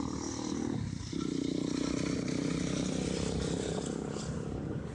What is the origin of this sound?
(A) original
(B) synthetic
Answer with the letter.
A